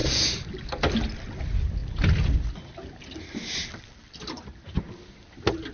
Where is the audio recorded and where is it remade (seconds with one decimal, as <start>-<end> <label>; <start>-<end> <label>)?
0.0-5.7 recorded